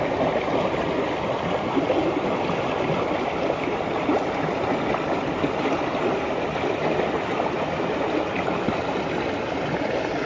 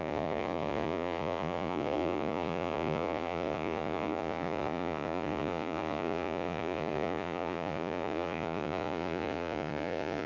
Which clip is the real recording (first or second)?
first